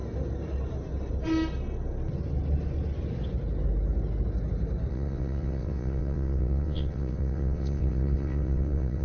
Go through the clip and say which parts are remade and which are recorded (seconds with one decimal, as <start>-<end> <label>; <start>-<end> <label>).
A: 0.0-4.9 recorded; 4.9-9.0 remade